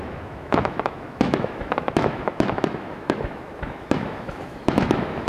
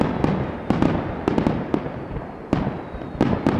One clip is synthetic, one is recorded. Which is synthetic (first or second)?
first